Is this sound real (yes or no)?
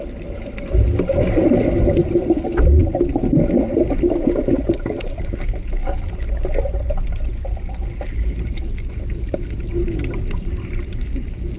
yes